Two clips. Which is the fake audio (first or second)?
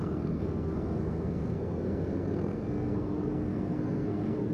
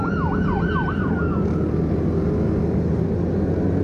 first